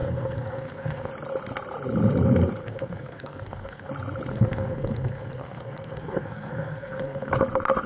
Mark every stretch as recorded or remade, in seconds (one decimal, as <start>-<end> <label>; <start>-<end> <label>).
0.0-1.1 remade; 1.1-2.6 recorded; 2.6-3.9 remade; 3.9-4.3 recorded; 4.3-7.3 remade; 7.3-7.9 recorded